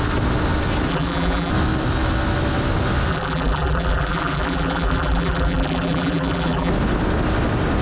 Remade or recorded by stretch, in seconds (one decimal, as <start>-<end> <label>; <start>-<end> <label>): 0.0-0.9 recorded; 0.9-1.5 remade; 1.5-3.1 recorded; 3.1-6.7 remade; 6.7-7.8 recorded